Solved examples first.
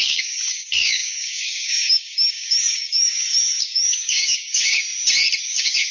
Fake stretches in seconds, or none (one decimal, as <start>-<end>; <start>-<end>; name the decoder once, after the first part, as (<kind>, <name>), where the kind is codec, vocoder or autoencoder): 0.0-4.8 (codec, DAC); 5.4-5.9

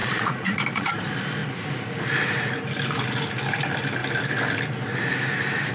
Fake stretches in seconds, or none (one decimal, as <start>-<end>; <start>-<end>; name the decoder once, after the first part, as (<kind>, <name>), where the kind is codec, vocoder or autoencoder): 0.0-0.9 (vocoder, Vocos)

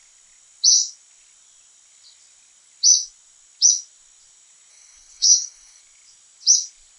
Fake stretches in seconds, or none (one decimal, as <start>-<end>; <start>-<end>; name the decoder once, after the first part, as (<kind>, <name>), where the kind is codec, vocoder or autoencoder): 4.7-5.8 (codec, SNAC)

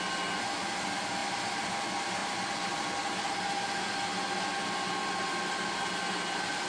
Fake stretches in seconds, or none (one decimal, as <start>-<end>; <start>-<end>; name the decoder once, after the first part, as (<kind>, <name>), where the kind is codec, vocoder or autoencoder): 2.2-2.7 (vocoder, BigVGAN v2)

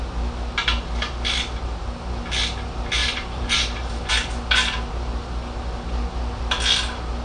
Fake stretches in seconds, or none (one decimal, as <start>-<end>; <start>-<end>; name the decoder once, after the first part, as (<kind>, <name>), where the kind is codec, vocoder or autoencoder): 3.0-4.1 (vocoder, BigVGAN v2)